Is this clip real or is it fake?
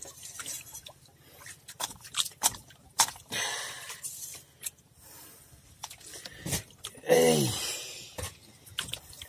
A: real